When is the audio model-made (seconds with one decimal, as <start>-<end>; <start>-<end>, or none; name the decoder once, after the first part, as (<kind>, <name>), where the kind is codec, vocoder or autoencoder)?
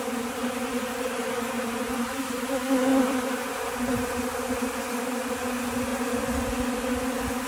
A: 0.4-1.3 (vocoder, BigVGAN v2); 2.9-4.5